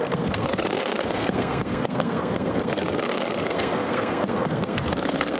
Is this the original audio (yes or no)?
no